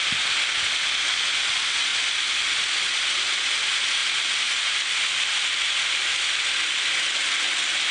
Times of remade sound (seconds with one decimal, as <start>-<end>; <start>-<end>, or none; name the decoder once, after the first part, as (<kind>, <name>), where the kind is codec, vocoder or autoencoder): none